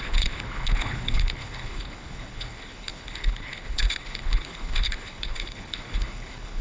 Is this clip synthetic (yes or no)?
yes